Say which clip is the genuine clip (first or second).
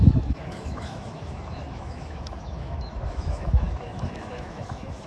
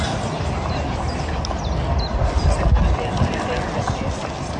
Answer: second